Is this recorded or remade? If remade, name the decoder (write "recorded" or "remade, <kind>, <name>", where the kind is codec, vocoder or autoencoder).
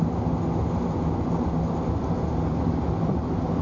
recorded